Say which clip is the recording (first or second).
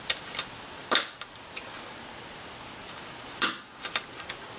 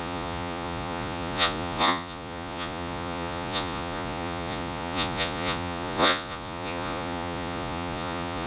first